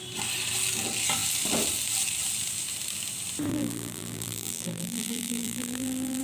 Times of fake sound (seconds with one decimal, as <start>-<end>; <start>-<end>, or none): 3.5-6.2